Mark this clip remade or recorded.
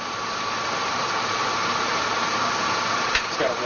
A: recorded